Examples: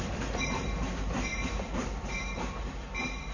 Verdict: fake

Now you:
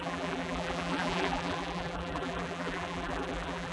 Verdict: fake